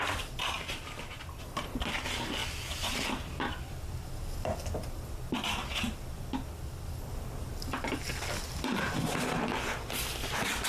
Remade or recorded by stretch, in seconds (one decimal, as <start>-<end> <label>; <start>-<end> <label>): 0.0-10.7 recorded